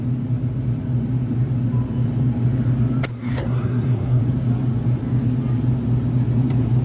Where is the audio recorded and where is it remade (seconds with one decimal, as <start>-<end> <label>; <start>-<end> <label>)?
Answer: 0.0-3.1 recorded; 3.1-4.2 remade; 4.2-6.8 recorded

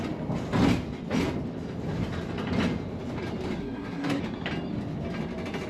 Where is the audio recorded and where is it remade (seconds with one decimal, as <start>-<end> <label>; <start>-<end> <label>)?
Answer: 0.0-3.6 recorded; 3.6-4.2 remade; 4.2-5.7 recorded

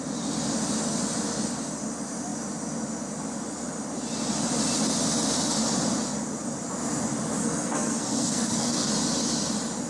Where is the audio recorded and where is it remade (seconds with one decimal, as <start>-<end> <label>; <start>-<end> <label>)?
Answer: 0.0-7.4 recorded; 7.4-8.9 remade; 8.9-9.9 recorded

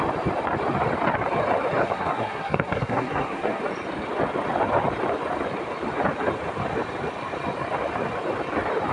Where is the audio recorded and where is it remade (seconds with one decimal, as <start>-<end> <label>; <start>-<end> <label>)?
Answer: 0.0-1.8 recorded; 1.8-3.6 remade; 3.6-8.9 recorded

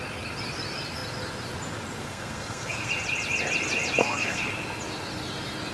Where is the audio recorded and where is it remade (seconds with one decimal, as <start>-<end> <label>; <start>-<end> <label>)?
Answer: 0.0-2.0 recorded; 2.0-2.9 remade; 2.9-4.0 recorded; 4.0-4.5 remade; 4.5-5.7 recorded

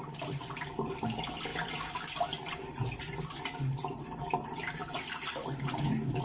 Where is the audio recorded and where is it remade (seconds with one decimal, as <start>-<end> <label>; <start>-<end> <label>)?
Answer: 0.0-6.2 recorded